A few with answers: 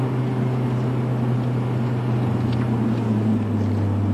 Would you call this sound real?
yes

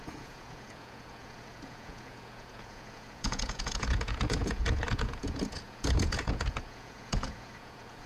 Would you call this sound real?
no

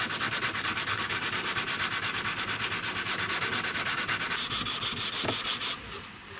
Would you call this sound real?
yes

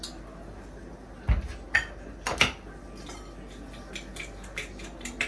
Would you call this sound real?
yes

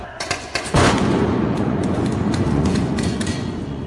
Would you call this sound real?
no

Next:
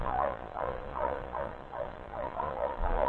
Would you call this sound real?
no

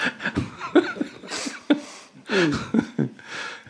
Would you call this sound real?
yes